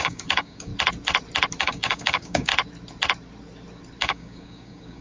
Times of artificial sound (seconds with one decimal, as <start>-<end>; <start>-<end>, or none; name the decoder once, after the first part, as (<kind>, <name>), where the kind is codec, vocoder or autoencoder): 0.0-0.7 (codec, DAC); 1.6-2.5; 4.0-5.0